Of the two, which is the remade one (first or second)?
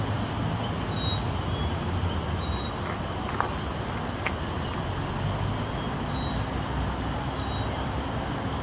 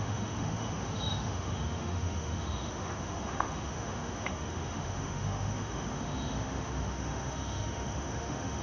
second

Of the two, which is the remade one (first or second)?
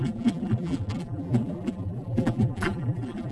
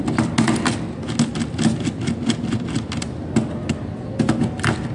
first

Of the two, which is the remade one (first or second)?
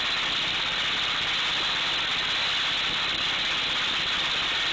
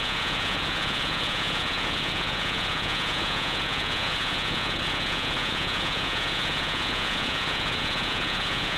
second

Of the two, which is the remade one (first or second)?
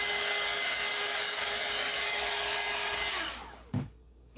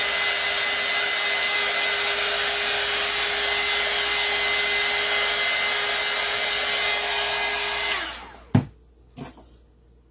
first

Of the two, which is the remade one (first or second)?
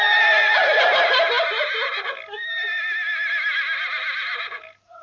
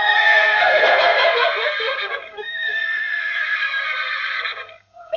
second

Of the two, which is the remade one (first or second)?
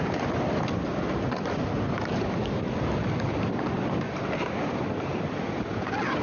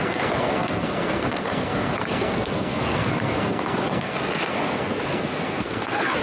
second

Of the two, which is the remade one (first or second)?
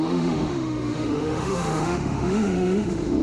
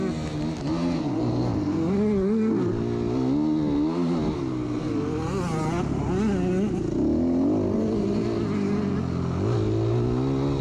first